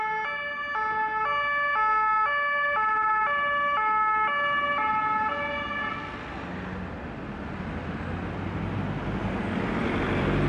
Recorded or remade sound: recorded